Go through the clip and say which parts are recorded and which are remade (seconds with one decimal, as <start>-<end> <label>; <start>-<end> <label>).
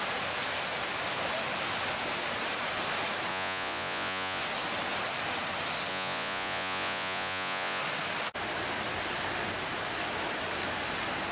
0.0-3.3 recorded; 3.3-4.4 remade; 4.4-5.9 recorded; 5.9-7.8 remade; 7.8-11.3 recorded